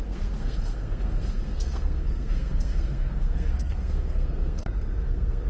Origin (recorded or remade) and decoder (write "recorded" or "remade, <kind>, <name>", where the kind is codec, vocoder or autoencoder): remade, codec, SNAC